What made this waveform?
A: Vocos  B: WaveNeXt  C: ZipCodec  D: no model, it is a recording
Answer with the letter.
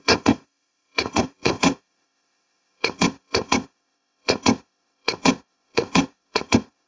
C